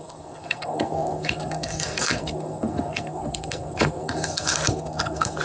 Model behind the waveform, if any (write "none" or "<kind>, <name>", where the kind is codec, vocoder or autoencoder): codec, SNAC